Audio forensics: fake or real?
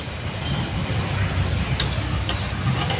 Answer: real